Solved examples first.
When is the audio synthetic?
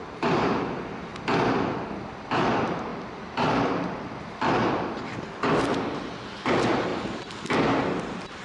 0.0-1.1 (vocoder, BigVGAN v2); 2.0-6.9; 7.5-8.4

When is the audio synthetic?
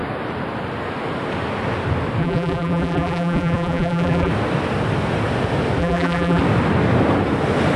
2.2-4.3 (vocoder, BigVGAN v2); 5.8-6.4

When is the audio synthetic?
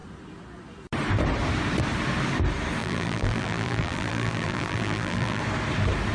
2.8-5.4 (vocoder, BigVGAN v2)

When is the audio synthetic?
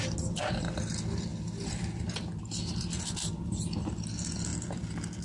0.4-0.9 (vocoder, BigVGAN v2); 1.3-3.6; 4.5-5.2